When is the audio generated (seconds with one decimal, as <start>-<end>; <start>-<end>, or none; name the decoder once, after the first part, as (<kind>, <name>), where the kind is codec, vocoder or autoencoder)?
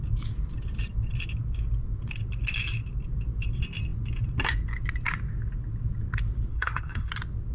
6.5-7.1 (codec, SNAC)